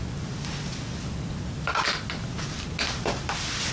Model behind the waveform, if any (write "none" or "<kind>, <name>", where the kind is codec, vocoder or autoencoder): none